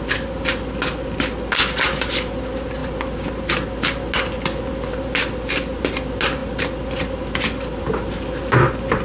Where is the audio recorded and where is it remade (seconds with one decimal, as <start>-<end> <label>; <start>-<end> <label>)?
0.0-9.0 recorded